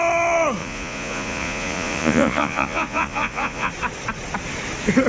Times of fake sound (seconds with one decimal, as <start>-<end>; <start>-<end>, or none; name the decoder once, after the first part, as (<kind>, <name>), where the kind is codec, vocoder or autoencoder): 0.6-3.7 (vocoder, Vocos)

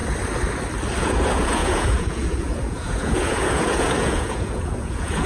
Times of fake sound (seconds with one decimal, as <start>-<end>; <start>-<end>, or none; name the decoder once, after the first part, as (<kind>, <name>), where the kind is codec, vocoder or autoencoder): 1.0-5.3 (vocoder, Vocos)